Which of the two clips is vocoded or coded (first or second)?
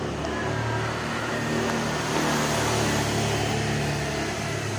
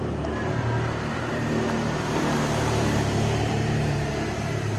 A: second